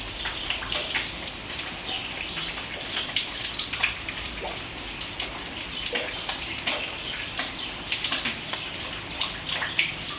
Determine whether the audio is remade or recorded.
remade